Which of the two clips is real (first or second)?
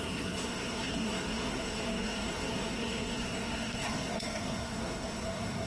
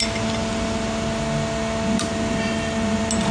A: second